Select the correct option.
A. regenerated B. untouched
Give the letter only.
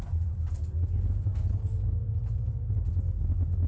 B